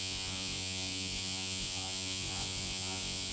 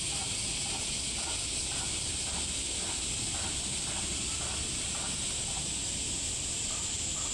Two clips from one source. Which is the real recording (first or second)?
second